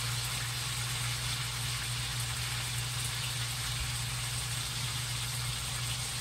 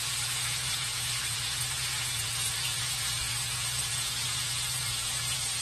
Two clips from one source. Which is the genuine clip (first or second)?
first